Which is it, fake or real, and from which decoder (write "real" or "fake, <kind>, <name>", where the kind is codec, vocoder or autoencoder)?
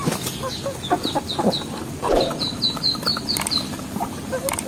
real